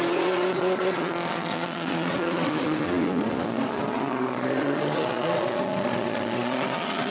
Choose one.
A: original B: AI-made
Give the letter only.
B